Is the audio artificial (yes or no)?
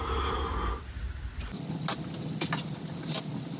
no